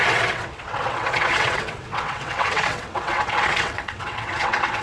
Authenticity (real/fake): fake